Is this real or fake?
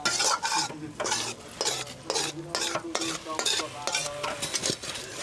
real